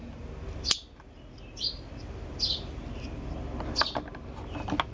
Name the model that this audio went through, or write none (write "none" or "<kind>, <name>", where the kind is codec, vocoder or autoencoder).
none